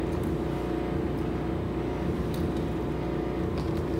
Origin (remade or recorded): recorded